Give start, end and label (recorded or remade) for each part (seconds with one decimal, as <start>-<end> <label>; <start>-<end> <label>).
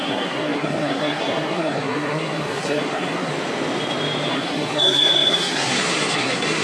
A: 0.0-3.3 remade; 3.3-4.3 recorded; 4.3-6.6 remade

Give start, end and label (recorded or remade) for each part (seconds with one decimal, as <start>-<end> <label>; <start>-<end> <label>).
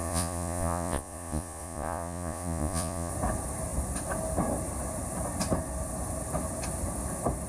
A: 0.0-3.1 remade; 3.1-7.5 recorded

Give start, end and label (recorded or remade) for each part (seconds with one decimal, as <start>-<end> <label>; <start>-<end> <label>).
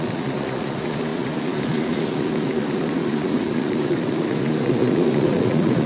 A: 0.0-5.9 remade